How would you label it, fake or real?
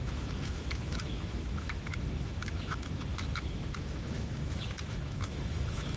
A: fake